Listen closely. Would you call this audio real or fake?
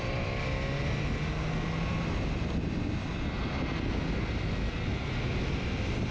real